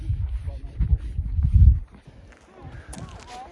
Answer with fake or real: real